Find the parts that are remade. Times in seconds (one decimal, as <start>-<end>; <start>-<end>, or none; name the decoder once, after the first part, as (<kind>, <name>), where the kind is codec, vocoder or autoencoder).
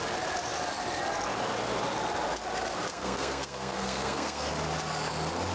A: 2.9-4.5 (codec, SNAC)